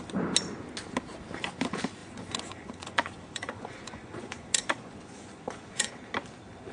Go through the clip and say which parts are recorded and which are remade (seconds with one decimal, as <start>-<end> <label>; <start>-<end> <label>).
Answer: 0.0-2.0 recorded; 2.0-5.9 remade; 5.9-6.7 recorded